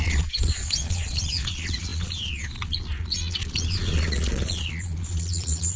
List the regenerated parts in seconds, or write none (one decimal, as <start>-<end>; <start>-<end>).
0.0-5.8